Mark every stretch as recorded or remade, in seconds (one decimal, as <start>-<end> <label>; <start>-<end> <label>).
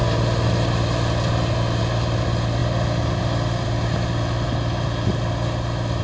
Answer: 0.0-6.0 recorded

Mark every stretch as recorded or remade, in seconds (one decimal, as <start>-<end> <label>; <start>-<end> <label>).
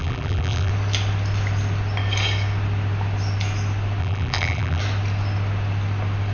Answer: 0.0-0.7 remade; 0.7-4.0 recorded; 4.0-4.8 remade; 4.8-6.3 recorded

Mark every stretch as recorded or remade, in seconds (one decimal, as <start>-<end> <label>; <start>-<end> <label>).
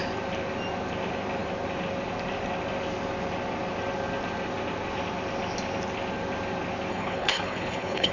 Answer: 0.0-6.9 recorded; 6.9-8.1 remade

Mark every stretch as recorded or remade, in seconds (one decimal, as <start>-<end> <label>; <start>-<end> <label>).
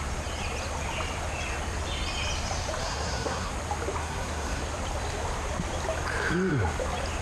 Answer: 0.0-2.8 recorded; 2.8-3.5 remade; 3.5-4.0 recorded; 4.0-4.6 remade; 4.6-7.2 recorded